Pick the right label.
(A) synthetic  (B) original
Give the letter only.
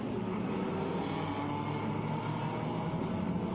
B